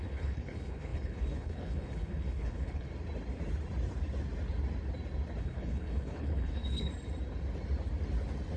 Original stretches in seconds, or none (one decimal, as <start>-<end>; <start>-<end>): 2.9-5.4; 6.9-8.6